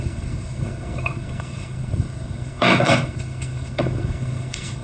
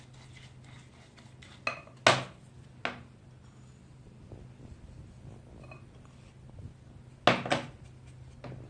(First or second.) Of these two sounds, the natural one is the second